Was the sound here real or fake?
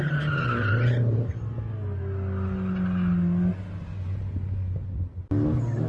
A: real